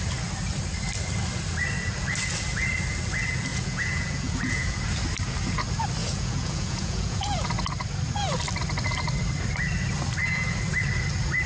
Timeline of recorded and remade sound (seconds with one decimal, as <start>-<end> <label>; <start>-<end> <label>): 0.0-3.5 recorded; 3.5-4.8 remade; 4.8-6.0 recorded; 6.0-7.5 remade; 7.5-11.5 recorded